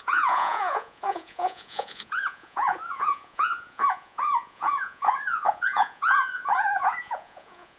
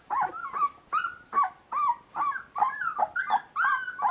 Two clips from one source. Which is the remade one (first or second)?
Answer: first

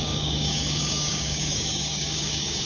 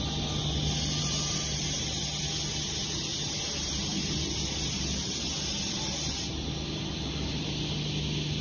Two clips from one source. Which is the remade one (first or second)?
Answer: first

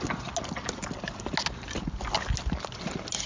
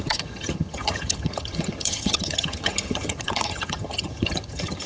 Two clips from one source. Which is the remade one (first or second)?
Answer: second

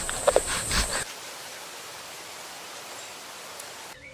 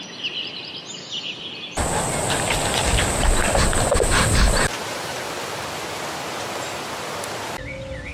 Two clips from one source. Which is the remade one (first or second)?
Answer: first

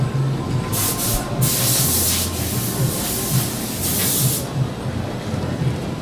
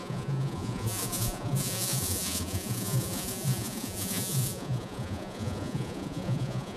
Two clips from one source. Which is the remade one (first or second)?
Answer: second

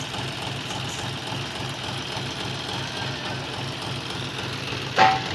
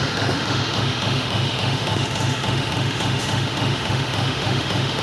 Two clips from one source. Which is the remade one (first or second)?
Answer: second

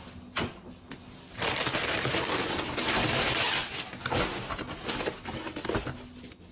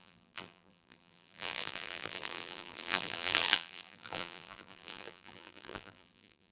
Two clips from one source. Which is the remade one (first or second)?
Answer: second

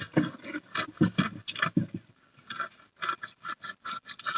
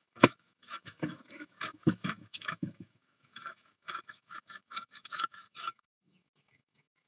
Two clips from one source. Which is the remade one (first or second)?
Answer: second